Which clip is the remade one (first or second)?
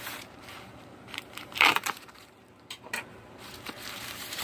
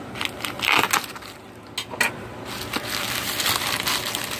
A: first